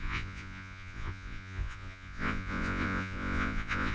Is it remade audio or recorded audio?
remade